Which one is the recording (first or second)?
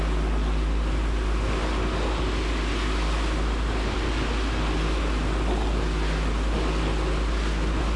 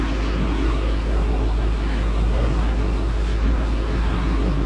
first